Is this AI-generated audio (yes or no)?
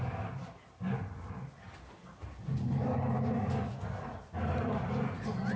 no